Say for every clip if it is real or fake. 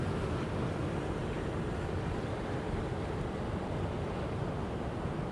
real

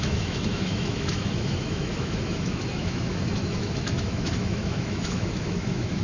fake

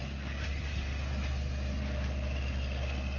real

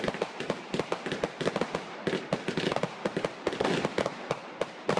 real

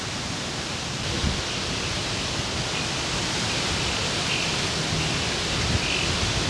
real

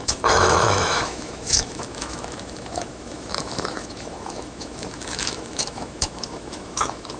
fake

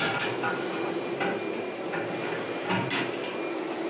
real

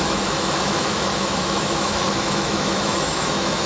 fake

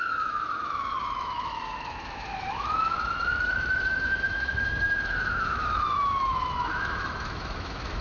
fake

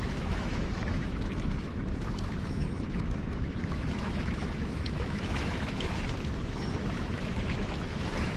fake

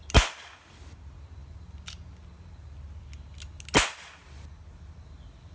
real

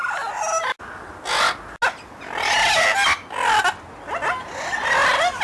real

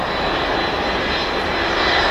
real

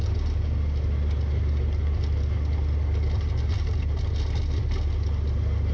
real